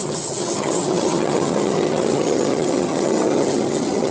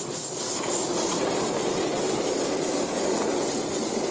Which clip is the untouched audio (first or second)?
second